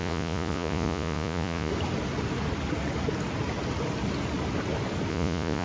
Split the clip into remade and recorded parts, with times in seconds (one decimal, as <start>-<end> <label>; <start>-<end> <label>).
0.0-1.7 remade; 1.7-5.1 recorded; 5.1-5.6 remade